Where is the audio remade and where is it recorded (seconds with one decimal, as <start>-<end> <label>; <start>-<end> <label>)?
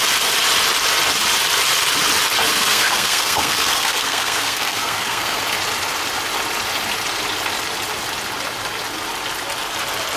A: 0.0-2.5 recorded; 2.5-5.4 remade; 5.4-10.2 recorded